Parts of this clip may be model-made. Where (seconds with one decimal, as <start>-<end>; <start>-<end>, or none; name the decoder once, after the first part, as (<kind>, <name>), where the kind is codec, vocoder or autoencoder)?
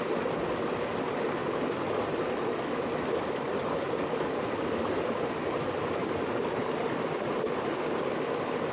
none